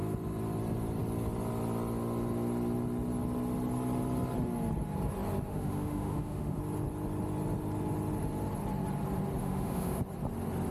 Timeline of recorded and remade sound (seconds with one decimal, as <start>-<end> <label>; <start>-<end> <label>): 0.0-5.5 recorded; 5.5-6.6 remade; 6.6-9.4 recorded; 9.4-10.0 remade; 10.0-10.7 recorded